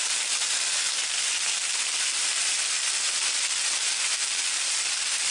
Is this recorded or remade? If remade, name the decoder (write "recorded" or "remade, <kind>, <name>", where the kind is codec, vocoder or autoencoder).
recorded